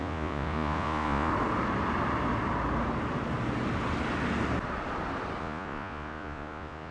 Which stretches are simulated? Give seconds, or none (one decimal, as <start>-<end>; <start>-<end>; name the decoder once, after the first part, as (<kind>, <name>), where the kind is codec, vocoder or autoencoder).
0.0-1.3 (vocoder, Vocos); 5.4-6.9